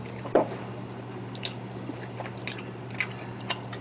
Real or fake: real